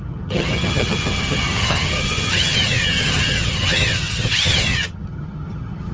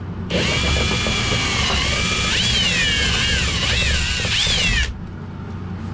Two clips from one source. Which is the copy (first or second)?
first